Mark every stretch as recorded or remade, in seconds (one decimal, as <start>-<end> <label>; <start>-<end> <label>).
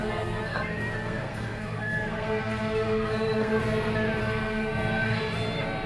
0.0-3.5 remade; 3.5-4.2 recorded; 4.2-5.2 remade; 5.2-5.9 recorded